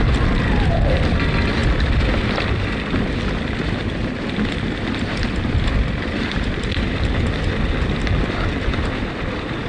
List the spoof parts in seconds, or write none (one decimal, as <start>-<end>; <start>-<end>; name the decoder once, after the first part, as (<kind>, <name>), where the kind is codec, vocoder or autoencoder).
none